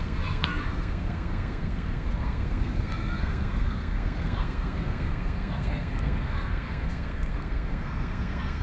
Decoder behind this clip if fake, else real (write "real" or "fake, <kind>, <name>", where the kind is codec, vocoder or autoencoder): fake, codec, SNAC